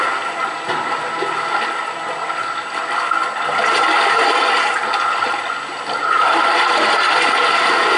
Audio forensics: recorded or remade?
recorded